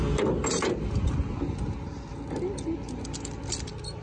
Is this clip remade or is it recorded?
recorded